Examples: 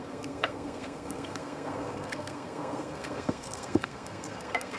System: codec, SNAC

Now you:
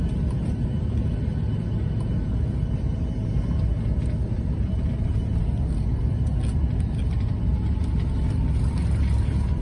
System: none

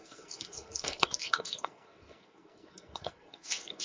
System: codec, SNAC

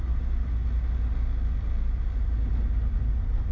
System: none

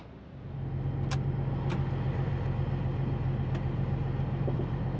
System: none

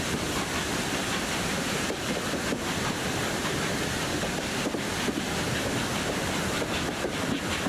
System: vocoder, BigVGAN v2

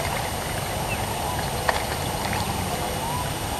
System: none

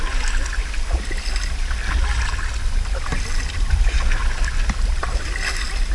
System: none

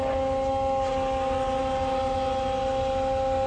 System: none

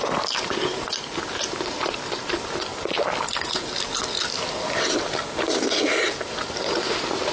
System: none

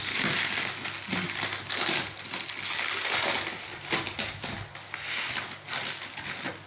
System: none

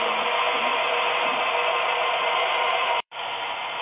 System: vocoder, BigVGAN v2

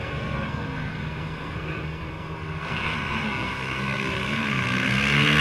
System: codec, SNAC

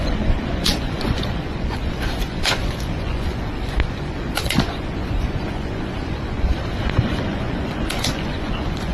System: vocoder, Vocos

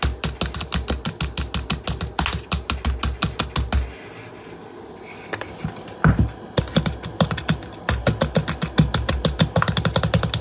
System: none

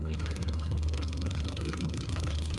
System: codec, SNAC